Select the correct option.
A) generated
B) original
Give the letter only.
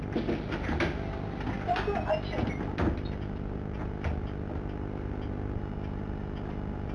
B